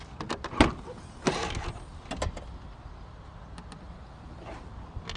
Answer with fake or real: real